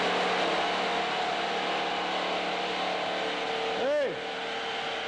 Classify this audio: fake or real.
real